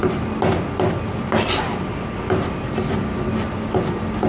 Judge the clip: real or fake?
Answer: real